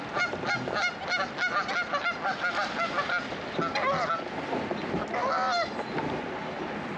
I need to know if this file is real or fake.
real